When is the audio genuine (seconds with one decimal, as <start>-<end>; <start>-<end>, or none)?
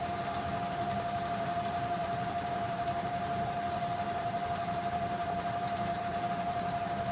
none